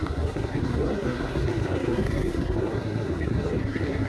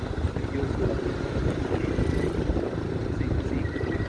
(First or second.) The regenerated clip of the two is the first